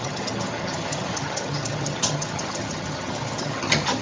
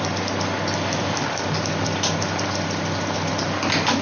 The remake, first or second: first